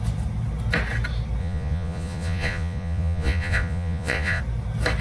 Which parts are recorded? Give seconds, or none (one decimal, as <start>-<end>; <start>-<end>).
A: 0.0-1.4; 4.4-5.0